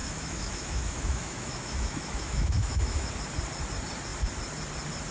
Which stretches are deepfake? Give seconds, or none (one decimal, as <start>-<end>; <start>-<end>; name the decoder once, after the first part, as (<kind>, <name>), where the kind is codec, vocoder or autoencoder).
0.0-3.1 (autoencoder, DAC-VAE)